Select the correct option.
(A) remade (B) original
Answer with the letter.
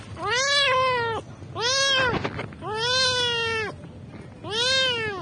B